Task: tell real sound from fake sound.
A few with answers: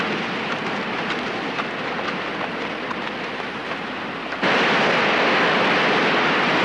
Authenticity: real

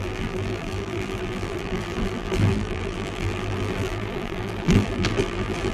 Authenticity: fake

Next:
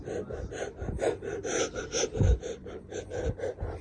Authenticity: fake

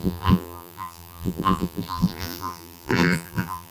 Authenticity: fake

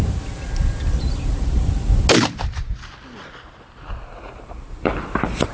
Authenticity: real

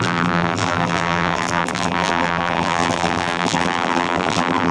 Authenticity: fake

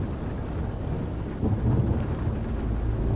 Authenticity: real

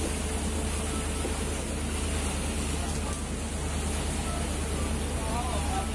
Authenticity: real